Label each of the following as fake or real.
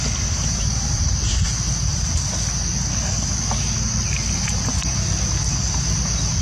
real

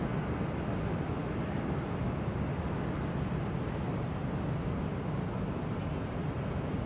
real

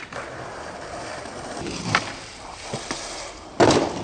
fake